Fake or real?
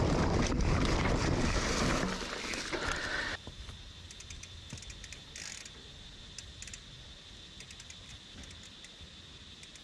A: real